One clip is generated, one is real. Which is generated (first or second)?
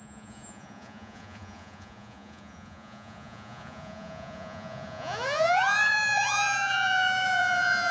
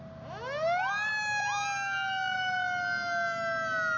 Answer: first